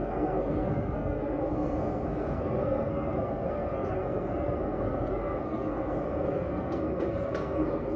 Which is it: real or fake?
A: fake